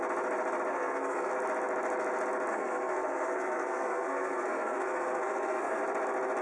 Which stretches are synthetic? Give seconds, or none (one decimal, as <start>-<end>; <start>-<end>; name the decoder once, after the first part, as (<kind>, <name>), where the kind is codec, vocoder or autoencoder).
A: 0.7-1.3 (codec, SNAC); 2.5-5.8